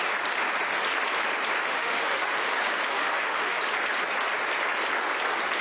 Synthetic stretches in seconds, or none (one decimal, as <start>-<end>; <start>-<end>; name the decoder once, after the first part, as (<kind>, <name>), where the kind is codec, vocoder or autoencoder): 1.7-2.5 (autoencoder, DAC-VAE); 2.9-3.6